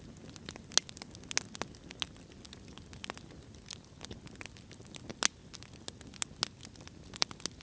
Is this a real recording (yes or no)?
yes